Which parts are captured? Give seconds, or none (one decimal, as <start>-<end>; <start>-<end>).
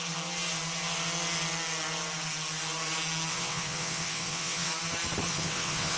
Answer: 0.0-3.3; 4.7-5.3